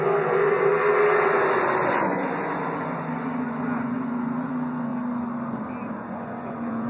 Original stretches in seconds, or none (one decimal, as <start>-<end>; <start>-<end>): 0.7-1.6; 4.9-5.9